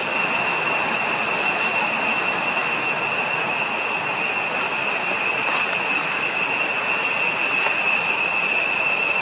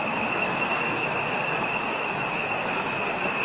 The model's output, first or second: second